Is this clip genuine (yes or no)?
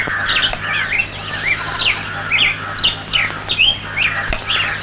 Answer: yes